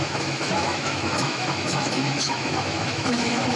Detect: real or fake fake